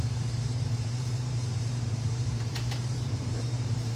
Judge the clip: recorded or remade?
remade